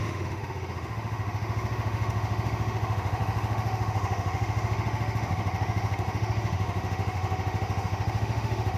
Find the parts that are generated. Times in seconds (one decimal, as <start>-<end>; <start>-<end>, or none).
0.0-8.8